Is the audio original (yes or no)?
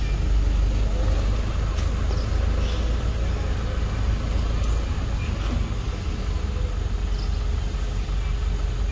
yes